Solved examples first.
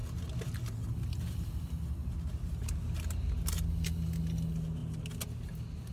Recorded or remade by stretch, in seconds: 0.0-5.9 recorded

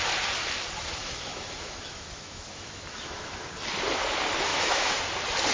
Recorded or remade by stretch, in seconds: 0.0-1.0 recorded; 1.0-3.5 remade; 3.5-4.5 recorded; 4.5-5.0 remade; 5.0-5.5 recorded

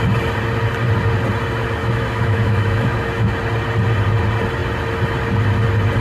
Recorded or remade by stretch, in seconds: 0.0-1.8 recorded; 1.8-3.3 remade; 3.3-6.0 recorded

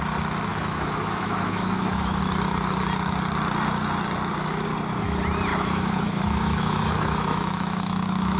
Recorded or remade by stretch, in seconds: 0.0-0.5 recorded; 0.5-2.2 remade; 2.2-5.5 recorded; 5.5-8.4 remade

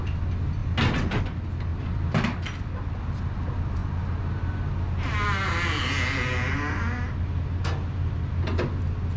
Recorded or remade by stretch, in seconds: 0.0-9.2 recorded

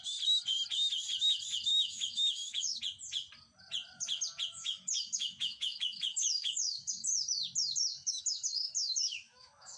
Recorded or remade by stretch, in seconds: 0.0-1.7 recorded; 1.7-2.8 remade; 2.8-4.5 recorded; 4.5-7.1 remade; 7.1-7.9 recorded; 7.9-9.8 remade

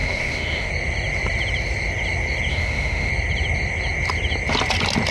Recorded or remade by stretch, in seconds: 0.0-0.7 remade; 0.7-2.5 recorded; 2.5-3.1 remade; 3.1-5.1 recorded

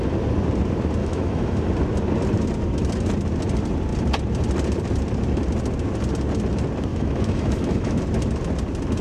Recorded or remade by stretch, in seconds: 0.0-1.0 recorded; 1.0-1.6 remade; 1.6-6.9 recorded; 6.9-8.0 remade; 8.0-9.0 recorded